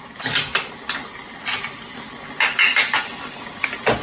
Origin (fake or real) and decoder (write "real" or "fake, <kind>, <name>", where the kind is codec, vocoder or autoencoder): real